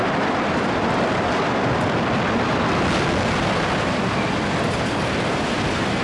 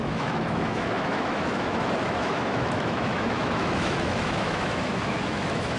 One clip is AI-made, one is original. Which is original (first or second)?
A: first